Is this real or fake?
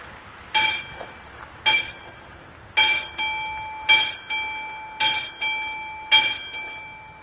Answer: real